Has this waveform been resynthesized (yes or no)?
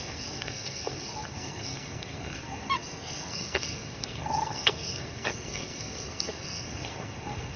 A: yes